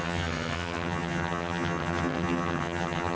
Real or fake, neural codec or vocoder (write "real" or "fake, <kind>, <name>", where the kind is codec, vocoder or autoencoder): fake, vocoder, HiFi-GAN